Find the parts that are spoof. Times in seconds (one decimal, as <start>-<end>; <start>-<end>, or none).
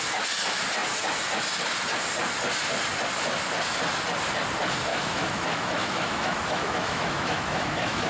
4.9-8.1